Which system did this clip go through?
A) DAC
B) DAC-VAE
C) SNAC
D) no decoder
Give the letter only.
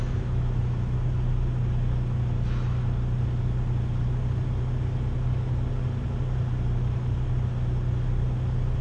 D